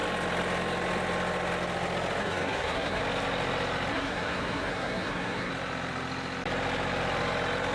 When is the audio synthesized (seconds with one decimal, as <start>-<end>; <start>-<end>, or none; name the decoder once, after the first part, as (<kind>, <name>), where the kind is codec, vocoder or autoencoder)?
2.2-3.0 (codec, SNAC); 3.9-5.5